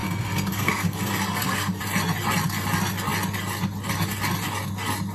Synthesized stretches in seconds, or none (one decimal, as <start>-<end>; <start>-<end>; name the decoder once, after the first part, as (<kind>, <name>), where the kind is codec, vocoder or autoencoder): 0.0-1.8 (codec, SNAC)